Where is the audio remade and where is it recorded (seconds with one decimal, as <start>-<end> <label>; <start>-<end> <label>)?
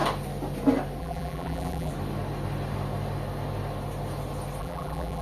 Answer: 0.0-1.0 recorded; 1.0-1.9 remade; 1.9-4.6 recorded; 4.6-5.2 remade